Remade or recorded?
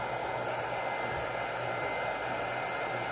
recorded